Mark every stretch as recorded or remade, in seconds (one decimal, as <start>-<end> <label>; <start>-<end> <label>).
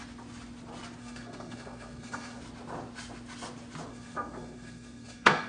0.0-1.0 recorded; 1.0-2.4 remade; 2.4-3.9 recorded; 3.9-5.5 remade